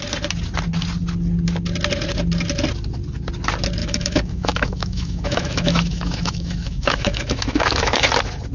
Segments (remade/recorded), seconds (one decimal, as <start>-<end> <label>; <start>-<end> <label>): 0.0-3.8 recorded; 3.8-8.1 remade; 8.1-8.5 recorded